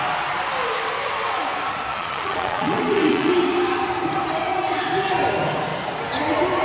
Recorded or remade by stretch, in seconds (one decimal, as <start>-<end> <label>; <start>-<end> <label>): 0.0-1.9 recorded; 1.9-3.3 remade; 3.3-6.6 recorded